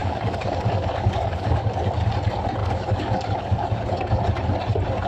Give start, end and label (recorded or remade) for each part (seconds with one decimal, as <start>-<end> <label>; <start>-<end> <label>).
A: 0.0-1.7 remade; 1.7-2.6 recorded; 2.6-4.2 remade; 4.2-5.1 recorded